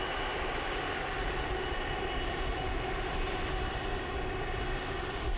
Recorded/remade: recorded